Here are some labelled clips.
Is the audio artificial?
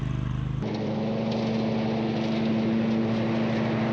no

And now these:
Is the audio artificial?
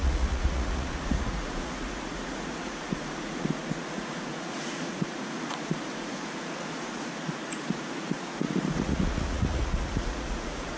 yes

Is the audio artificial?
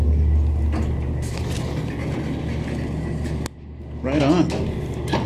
no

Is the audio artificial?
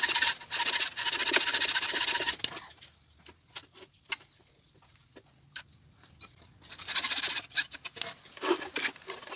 no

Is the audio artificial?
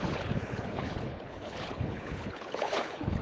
yes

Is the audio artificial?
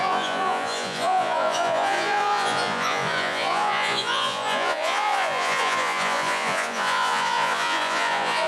yes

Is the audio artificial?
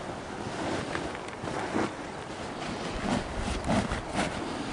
no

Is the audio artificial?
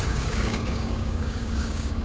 yes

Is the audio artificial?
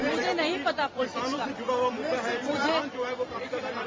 yes